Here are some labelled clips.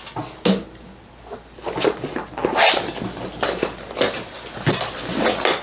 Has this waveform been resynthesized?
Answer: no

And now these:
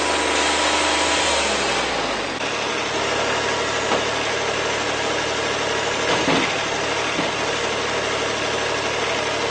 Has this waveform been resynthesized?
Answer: no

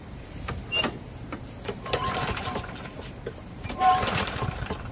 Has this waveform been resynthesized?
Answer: yes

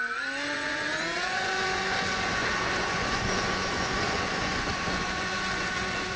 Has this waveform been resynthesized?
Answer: yes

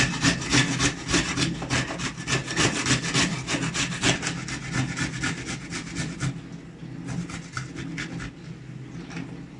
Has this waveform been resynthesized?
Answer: no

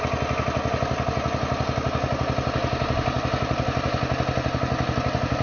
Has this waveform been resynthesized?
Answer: no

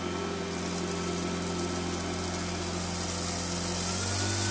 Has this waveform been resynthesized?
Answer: no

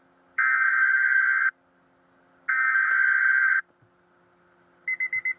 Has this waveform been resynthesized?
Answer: no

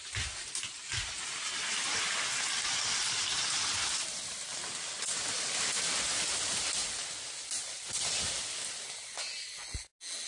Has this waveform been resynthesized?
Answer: no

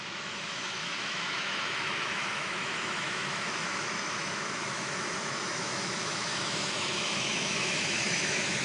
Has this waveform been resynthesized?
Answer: yes